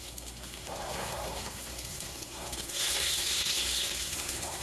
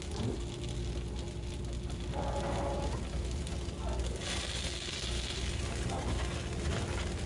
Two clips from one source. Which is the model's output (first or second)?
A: first